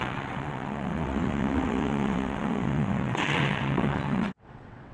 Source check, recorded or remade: remade